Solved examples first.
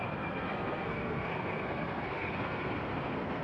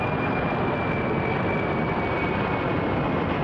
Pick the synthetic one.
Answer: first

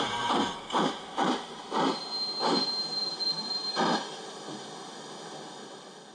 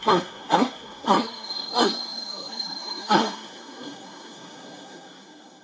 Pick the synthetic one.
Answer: second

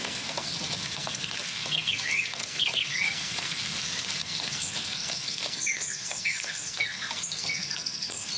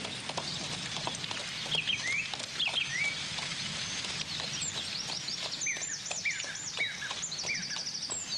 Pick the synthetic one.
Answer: first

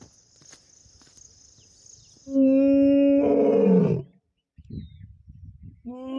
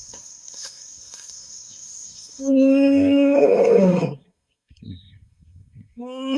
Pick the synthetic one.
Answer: second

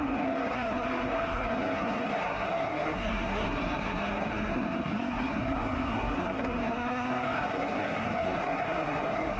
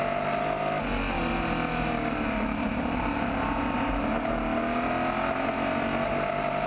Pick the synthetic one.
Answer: first